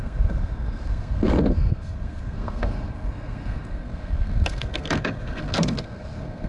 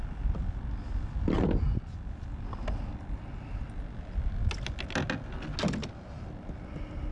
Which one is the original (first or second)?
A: second